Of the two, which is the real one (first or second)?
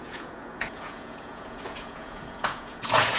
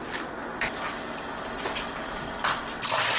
second